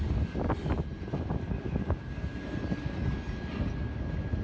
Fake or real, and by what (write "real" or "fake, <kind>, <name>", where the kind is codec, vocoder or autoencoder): real